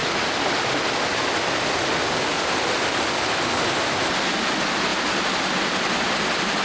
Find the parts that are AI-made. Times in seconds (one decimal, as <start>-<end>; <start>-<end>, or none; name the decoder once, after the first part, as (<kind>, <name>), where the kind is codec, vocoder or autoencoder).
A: none